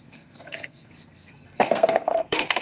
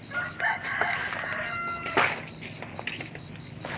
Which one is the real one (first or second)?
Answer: second